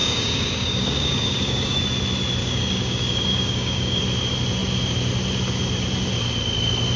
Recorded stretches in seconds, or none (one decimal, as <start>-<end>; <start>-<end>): 1.8-2.4; 4.0-7.0